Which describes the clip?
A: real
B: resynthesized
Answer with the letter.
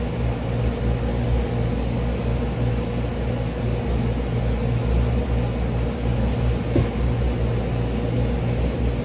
A